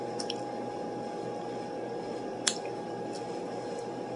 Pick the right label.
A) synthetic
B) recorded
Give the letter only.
B